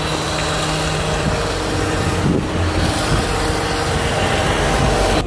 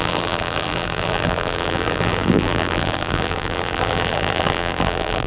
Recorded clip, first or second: first